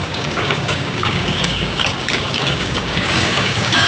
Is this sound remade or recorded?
remade